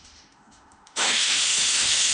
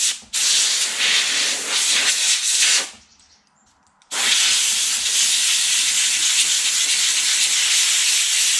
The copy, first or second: first